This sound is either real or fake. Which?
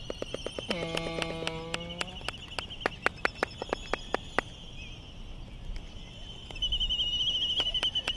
real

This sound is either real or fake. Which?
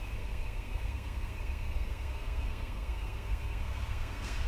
fake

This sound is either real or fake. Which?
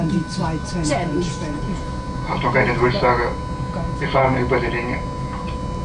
real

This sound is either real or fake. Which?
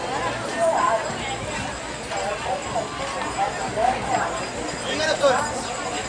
real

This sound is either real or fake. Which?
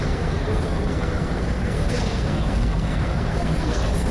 fake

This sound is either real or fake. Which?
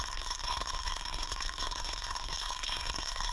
fake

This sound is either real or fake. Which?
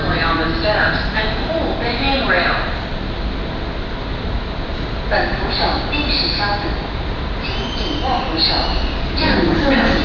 real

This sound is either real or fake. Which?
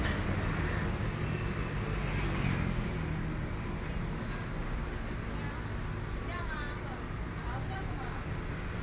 real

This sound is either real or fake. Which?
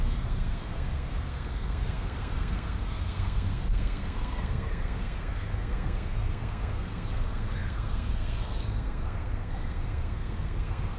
fake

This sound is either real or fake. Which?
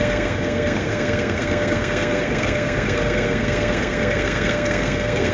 fake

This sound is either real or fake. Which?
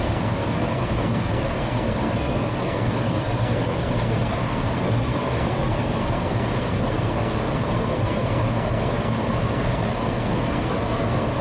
fake